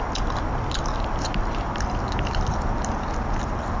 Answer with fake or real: real